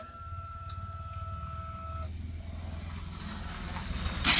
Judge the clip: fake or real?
real